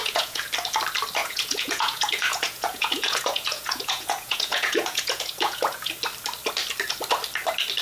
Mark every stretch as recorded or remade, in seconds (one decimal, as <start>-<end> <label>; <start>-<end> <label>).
0.0-0.5 remade; 0.5-1.2 recorded; 1.2-5.9 remade; 5.9-7.8 recorded